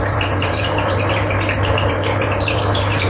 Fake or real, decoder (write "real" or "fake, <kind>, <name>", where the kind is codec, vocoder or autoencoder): fake, vocoder, BigVGAN v2